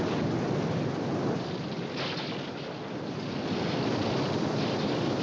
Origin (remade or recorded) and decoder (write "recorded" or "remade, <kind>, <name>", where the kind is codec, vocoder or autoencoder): recorded